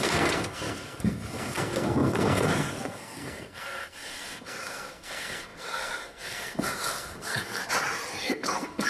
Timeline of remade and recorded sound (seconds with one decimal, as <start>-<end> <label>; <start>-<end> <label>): 0.0-7.6 remade; 7.6-8.2 recorded; 8.2-8.9 remade